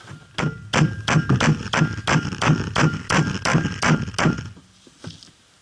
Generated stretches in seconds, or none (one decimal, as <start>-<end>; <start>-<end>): none